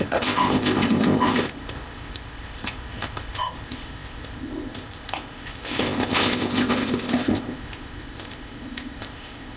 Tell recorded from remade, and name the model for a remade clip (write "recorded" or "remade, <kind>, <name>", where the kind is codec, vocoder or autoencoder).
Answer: remade, codec, ZipCodec